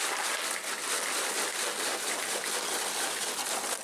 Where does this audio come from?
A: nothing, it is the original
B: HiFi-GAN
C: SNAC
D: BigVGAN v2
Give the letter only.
A